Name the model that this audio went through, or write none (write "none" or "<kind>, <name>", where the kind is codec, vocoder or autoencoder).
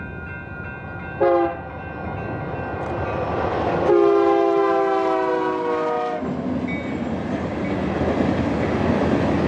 none